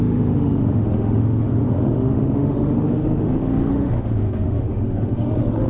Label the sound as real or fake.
fake